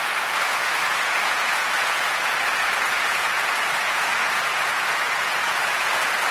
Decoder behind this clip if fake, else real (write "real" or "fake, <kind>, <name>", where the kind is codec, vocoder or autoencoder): fake, vocoder, Vocos